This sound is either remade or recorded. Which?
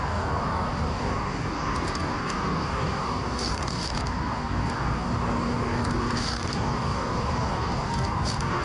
remade